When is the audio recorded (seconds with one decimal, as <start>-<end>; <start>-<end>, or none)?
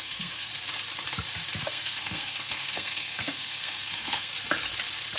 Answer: 0.5-1.6; 4.3-5.2